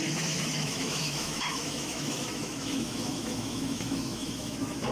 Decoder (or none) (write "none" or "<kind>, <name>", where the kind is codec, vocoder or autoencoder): autoencoder, DAC-VAE